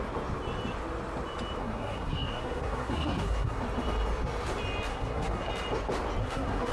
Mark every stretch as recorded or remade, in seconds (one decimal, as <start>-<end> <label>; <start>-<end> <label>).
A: 0.0-1.6 recorded; 1.6-3.6 remade; 3.6-4.9 recorded; 4.9-5.5 remade; 5.5-6.2 recorded; 6.2-6.7 remade